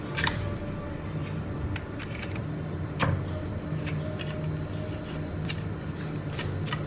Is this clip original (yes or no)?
yes